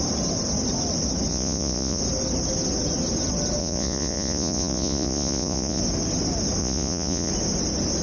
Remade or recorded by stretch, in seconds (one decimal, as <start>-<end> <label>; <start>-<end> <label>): 0.0-1.3 recorded; 1.3-2.0 remade; 2.0-3.6 recorded; 3.6-5.8 remade; 5.8-6.6 recorded; 6.6-7.3 remade; 7.3-8.0 recorded